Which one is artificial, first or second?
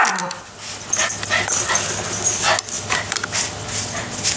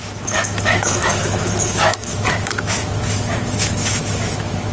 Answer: second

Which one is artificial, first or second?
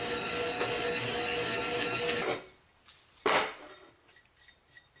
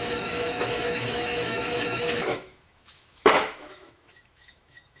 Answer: second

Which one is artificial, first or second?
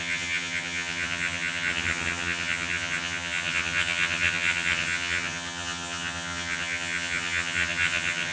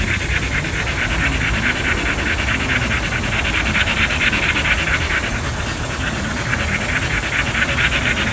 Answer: first